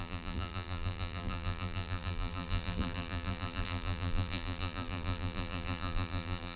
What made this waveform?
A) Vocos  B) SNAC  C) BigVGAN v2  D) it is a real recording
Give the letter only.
C